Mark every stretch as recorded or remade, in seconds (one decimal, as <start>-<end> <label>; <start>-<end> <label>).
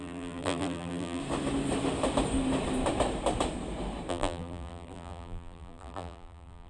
0.0-1.2 remade; 1.2-4.1 recorded; 4.1-6.7 remade